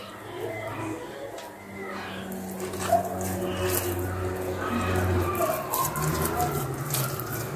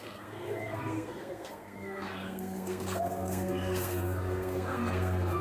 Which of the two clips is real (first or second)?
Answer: first